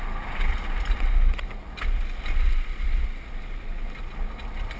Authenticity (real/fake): real